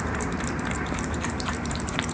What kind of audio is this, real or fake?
fake